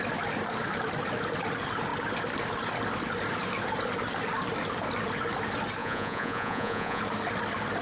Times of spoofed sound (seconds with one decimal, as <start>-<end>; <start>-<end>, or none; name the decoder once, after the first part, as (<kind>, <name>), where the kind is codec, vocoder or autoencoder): 5.8-7.0 (vocoder, Vocos)